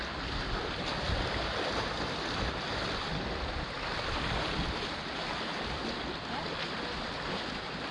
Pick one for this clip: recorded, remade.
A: recorded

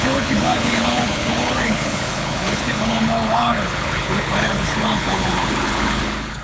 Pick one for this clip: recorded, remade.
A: remade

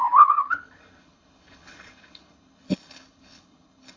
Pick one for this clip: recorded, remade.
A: remade